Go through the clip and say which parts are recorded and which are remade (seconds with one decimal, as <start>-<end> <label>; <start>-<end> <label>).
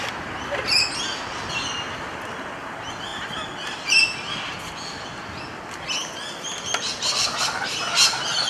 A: 0.0-8.5 recorded